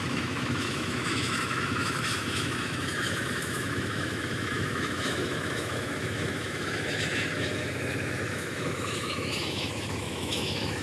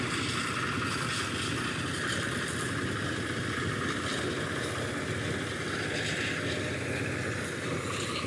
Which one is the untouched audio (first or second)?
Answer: second